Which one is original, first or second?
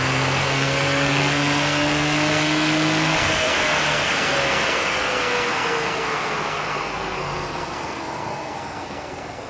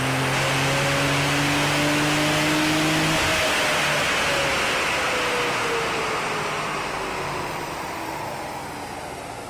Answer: second